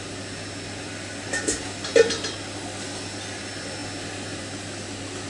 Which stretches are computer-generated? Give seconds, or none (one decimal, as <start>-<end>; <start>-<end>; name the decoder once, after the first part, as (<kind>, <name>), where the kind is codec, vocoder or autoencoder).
none